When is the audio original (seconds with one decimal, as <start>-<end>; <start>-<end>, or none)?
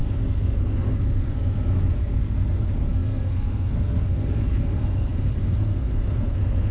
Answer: none